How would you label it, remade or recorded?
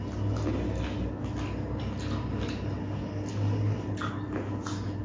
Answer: recorded